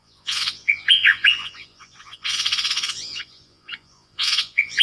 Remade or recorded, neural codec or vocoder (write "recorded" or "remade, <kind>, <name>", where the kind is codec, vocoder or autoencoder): remade, vocoder, Vocos